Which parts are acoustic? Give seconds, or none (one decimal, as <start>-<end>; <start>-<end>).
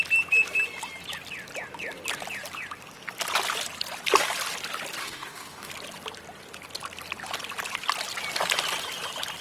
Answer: 0.0-5.0; 5.7-9.4